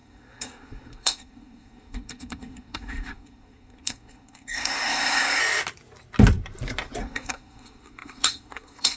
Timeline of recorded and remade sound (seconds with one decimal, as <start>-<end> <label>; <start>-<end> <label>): 0.0-5.4 remade; 5.4-7.0 recorded; 7.0-9.0 remade